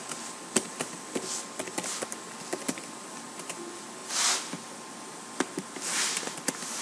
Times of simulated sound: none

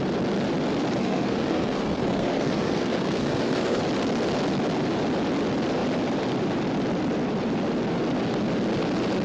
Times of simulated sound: 1.0-3.8 (codec, SNAC)